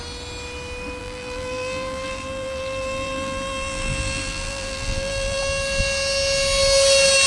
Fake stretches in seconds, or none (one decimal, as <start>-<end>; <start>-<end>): 1.0-5.4